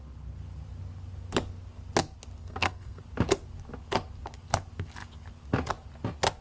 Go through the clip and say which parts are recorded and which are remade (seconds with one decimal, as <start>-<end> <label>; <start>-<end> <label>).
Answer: 0.0-2.4 recorded; 2.4-3.0 remade; 3.0-6.4 recorded

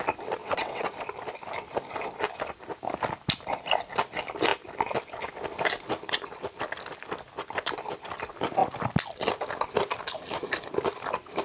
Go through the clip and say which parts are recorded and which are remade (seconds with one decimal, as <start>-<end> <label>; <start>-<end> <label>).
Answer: 0.0-0.4 recorded; 0.4-0.9 remade; 0.9-11.4 recorded

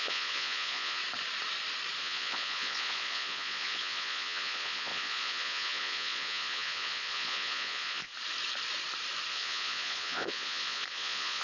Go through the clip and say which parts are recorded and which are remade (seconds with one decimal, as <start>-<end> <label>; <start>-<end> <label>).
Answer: 0.0-1.0 remade; 1.0-2.0 recorded; 2.0-8.1 remade; 8.1-9.3 recorded; 9.3-11.4 remade